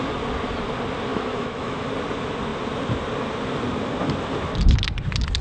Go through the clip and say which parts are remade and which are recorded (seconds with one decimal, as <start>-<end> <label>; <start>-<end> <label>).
0.0-1.1 recorded; 1.1-1.9 remade; 1.9-5.4 recorded